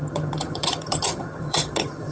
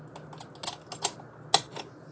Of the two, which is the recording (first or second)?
second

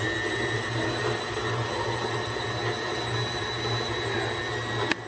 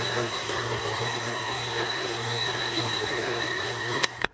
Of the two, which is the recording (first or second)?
first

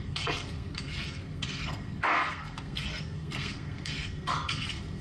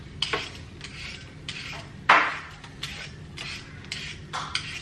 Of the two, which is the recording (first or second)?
second